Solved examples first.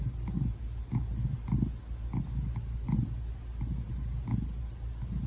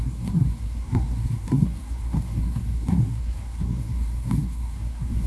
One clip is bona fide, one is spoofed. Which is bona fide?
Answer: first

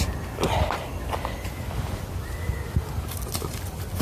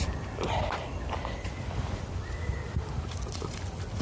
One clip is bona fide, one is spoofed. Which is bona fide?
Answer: first